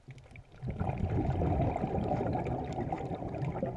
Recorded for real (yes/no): yes